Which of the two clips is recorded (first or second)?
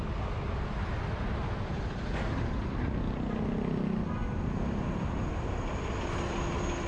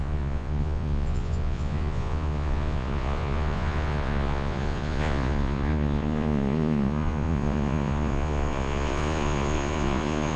first